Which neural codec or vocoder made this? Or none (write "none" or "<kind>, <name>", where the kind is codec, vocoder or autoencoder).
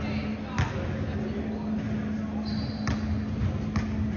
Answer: none